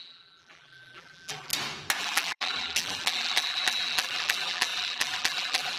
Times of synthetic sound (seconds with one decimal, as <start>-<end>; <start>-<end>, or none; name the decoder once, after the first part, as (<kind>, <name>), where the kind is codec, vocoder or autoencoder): 0.0-1.5 (vocoder, BigVGAN v2); 2.0-5.8